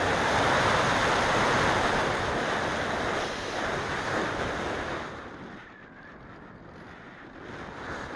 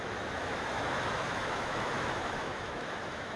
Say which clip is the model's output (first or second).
second